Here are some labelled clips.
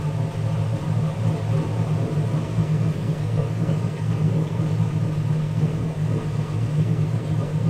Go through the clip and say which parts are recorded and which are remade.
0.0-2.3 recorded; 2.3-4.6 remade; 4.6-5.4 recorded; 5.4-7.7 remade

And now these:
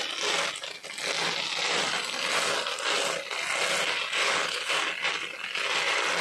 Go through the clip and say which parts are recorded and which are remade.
0.0-4.2 recorded; 4.2-4.7 remade; 4.7-6.2 recorded

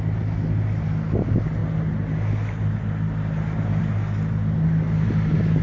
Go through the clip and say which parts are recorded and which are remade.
0.0-5.6 recorded